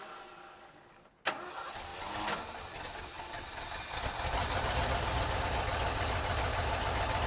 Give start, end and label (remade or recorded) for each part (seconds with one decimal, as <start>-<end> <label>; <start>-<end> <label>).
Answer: 0.0-7.3 recorded